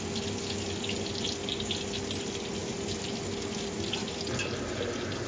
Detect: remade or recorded recorded